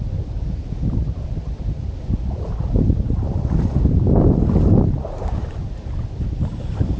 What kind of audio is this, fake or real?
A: real